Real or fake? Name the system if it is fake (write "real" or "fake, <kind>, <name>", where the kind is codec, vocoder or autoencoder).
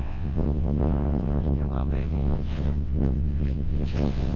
fake, vocoder, WaveNeXt